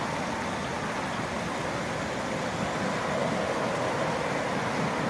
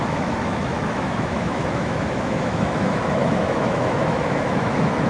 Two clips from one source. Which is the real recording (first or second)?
first